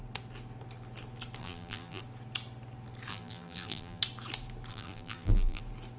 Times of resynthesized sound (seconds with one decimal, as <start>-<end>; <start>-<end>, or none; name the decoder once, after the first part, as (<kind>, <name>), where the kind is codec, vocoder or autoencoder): 1.4-2.0 (vocoder, BigVGAN v2); 3.1-4.0; 4.7-5.6